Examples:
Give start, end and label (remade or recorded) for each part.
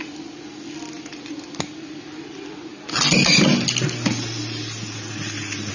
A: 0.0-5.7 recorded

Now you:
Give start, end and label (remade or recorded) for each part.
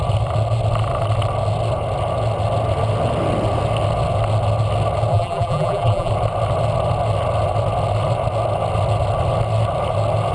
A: 0.0-5.1 recorded; 5.1-6.1 remade; 6.1-10.3 recorded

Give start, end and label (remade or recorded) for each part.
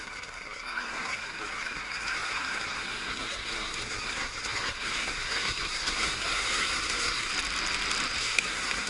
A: 0.0-7.3 remade; 7.3-8.2 recorded; 8.2-8.9 remade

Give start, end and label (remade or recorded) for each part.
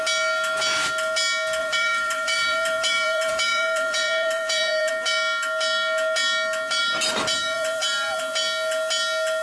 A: 0.0-1.6 recorded; 1.6-4.9 remade; 4.9-6.8 recorded; 6.8-8.2 remade; 8.2-9.4 recorded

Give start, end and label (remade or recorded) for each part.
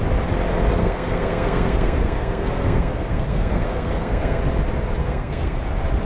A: 0.0-0.8 recorded; 0.8-4.4 remade; 4.4-5.0 recorded; 5.0-5.6 remade; 5.6-6.0 recorded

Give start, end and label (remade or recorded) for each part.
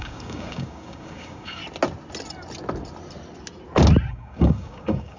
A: 0.0-1.6 remade; 1.6-4.1 recorded; 4.1-5.2 remade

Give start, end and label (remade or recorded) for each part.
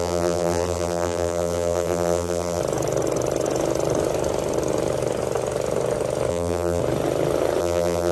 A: 0.0-2.6 remade; 2.6-6.3 recorded; 6.3-6.8 remade; 6.8-7.6 recorded; 7.6-8.1 remade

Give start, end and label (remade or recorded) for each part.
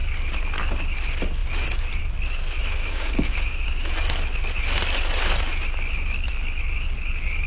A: 0.0-2.8 recorded; 2.8-3.9 remade; 3.9-7.5 recorded